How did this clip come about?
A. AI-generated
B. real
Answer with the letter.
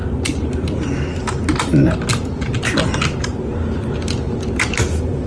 B